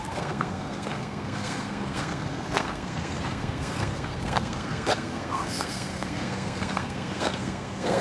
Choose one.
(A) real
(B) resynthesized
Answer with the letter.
B